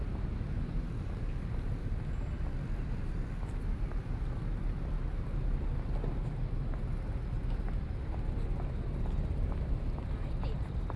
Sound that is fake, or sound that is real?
real